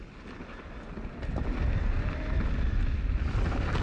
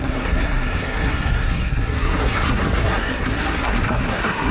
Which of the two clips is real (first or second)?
first